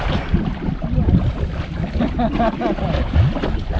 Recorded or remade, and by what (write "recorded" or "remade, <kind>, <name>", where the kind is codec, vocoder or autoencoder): recorded